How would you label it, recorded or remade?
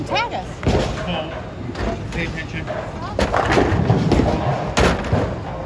recorded